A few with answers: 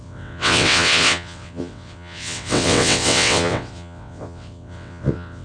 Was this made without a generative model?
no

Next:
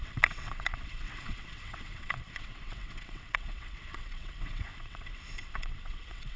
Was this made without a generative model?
no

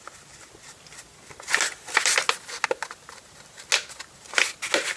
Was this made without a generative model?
yes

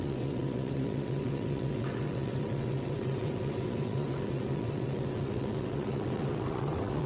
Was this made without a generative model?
no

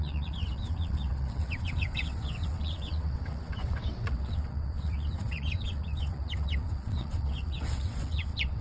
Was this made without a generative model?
no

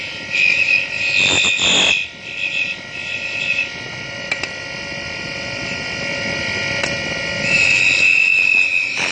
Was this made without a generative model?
yes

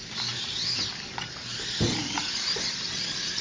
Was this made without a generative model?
yes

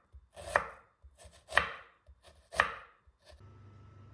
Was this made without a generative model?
yes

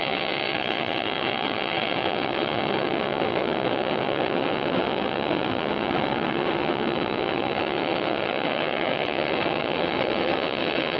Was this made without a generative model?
no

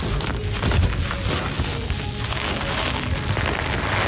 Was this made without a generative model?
yes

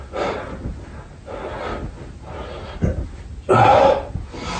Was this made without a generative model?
yes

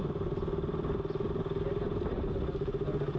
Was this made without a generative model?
yes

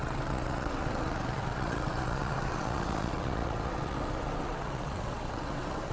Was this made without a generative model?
no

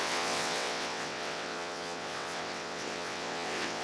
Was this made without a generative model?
no